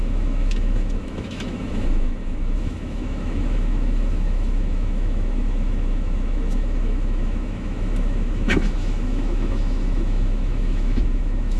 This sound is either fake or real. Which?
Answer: fake